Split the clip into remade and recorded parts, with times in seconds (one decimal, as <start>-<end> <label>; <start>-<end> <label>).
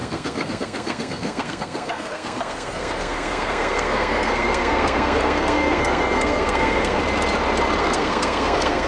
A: 0.0-7.0 remade; 7.0-7.8 recorded; 7.8-8.9 remade